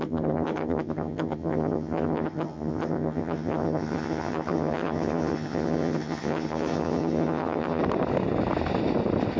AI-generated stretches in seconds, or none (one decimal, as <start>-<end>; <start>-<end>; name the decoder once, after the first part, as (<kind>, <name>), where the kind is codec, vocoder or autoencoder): 0.0-7.8 (vocoder, HiFi-GAN)